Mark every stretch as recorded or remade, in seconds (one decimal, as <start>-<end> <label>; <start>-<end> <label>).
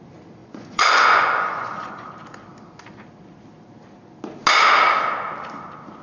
0.0-0.4 recorded; 0.4-2.1 remade; 2.1-6.0 recorded